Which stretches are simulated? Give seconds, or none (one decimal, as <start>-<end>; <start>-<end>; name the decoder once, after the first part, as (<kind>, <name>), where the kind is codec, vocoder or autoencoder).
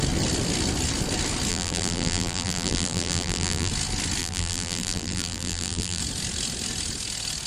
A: 1.5-3.7 (vocoder, BigVGAN v2); 4.2-6.0